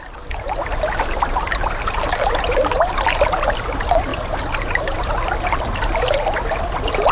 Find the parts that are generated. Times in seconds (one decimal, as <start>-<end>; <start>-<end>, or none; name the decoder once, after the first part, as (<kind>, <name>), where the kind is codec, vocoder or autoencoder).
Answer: none